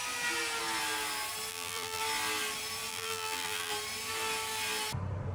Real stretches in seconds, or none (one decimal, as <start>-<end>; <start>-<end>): 0.0-1.5; 2.0-2.9; 3.7-5.3